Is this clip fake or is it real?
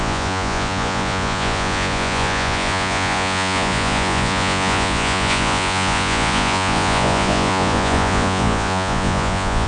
fake